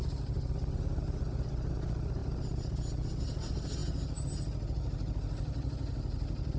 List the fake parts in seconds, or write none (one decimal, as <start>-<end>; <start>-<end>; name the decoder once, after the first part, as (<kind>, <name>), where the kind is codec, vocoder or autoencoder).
none